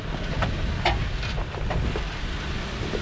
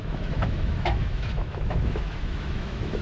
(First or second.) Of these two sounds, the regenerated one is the second